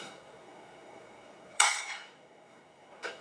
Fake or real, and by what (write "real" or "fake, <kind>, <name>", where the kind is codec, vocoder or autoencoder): fake, codec, SNAC